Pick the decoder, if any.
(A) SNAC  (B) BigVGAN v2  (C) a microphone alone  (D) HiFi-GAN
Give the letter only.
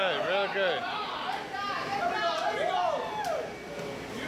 C